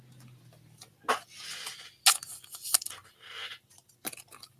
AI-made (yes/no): no